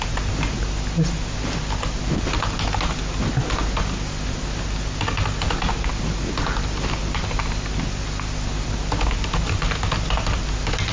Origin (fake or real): real